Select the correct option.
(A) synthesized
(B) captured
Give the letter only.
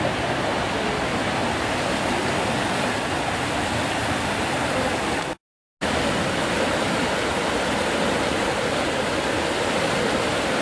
B